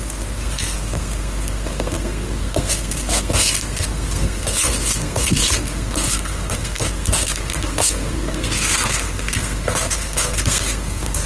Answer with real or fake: fake